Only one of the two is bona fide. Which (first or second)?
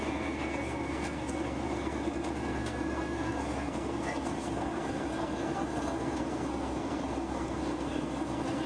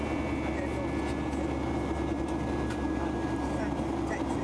second